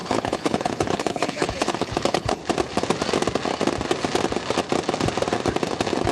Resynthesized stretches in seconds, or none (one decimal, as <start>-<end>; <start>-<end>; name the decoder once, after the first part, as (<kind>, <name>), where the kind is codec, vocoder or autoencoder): 0.0-2.4 (codec, HILCodec)